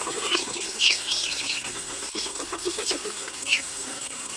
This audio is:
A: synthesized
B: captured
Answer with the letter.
A